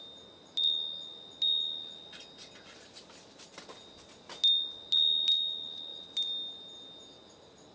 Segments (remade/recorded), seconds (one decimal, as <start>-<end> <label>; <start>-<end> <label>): 0.0-7.7 recorded